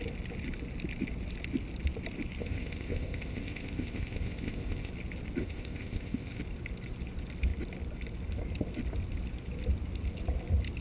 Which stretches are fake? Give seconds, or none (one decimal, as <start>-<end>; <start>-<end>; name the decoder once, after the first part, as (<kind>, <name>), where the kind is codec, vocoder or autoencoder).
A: 2.4-4.9 (codec, ZipCodec); 5.4-6.4